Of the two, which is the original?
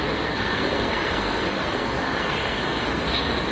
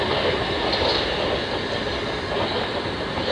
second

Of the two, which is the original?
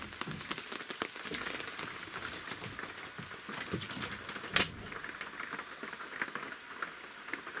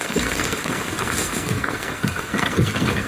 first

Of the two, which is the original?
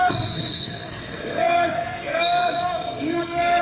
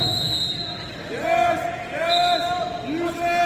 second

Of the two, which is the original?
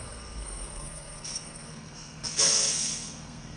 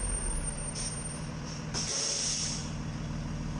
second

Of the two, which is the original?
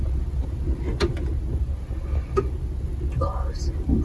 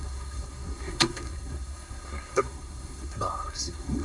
first